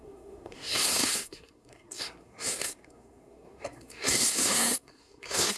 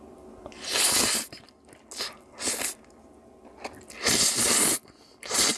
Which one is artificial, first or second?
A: first